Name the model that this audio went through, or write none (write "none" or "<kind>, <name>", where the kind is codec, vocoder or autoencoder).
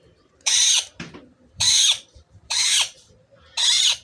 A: vocoder, BigVGAN v2